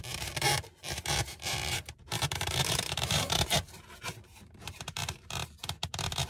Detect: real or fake fake